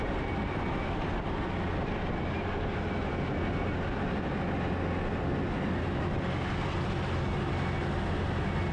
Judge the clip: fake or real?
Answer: real